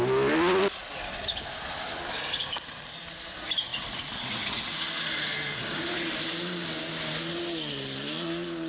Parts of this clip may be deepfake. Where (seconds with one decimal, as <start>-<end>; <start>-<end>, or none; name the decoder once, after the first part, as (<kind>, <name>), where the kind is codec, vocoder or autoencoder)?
none